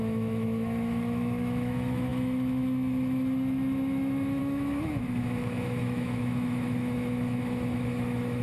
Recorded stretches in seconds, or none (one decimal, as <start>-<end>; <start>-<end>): none